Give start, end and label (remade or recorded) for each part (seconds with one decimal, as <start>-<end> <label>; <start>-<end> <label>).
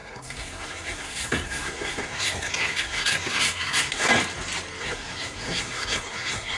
0.0-4.1 remade; 4.1-4.8 recorded; 4.8-6.6 remade